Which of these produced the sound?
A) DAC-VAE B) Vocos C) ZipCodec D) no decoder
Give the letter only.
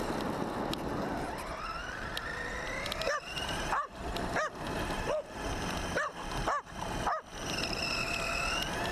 D